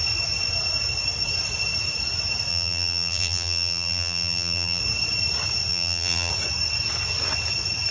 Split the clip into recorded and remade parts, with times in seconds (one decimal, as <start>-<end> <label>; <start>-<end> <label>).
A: 0.0-2.5 recorded; 2.5-4.8 remade; 4.8-5.7 recorded; 5.7-6.3 remade; 6.3-7.9 recorded